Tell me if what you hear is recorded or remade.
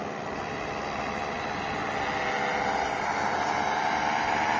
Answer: recorded